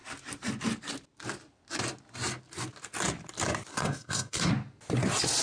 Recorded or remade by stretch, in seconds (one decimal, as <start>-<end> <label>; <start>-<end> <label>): 0.0-3.7 recorded; 3.7-4.5 remade; 4.5-5.4 recorded